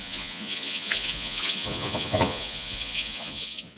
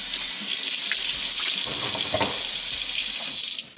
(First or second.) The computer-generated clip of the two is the first